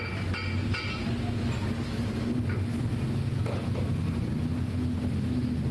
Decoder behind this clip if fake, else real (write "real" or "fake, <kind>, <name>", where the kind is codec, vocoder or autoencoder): real